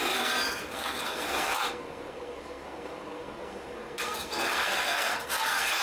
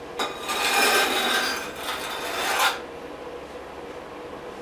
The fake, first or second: first